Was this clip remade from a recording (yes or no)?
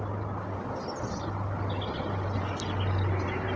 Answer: no